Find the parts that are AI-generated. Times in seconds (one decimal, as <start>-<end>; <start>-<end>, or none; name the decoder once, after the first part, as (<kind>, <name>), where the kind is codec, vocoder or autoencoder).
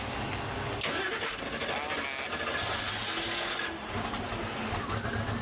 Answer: none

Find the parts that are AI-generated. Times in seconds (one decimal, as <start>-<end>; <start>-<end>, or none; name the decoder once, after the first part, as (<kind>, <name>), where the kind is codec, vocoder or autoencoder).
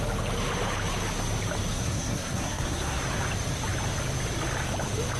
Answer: 1.7-3.0 (codec, SNAC)